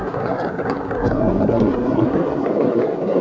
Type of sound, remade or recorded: remade